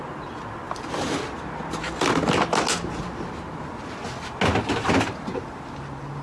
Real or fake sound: real